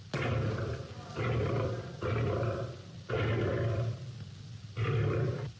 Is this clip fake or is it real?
real